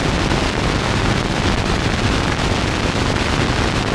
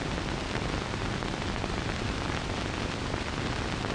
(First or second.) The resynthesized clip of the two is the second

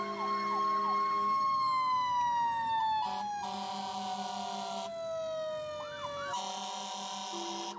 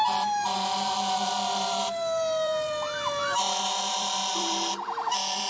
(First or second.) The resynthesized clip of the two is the second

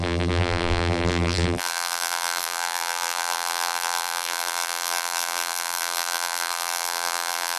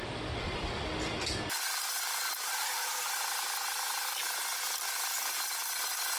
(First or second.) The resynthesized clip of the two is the first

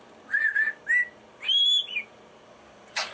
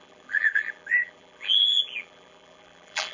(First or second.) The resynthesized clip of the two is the second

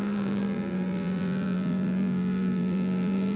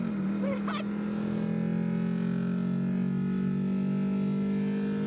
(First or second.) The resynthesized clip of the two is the first